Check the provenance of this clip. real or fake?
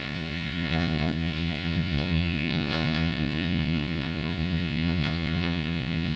fake